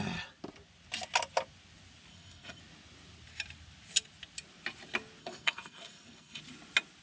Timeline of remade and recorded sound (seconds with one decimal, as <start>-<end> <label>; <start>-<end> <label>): 0.0-2.1 recorded; 2.1-2.6 remade; 2.6-5.2 recorded; 5.2-6.4 remade; 6.4-7.0 recorded